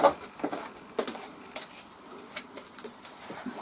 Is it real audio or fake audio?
real